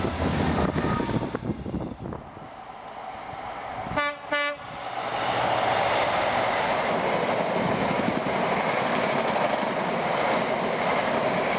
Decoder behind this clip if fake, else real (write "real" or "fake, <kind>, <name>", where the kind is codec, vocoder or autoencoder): real